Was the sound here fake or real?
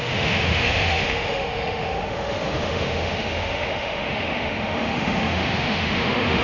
fake